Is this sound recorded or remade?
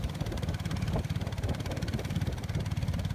recorded